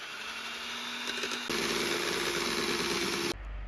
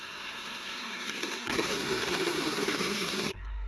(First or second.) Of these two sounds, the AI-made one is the second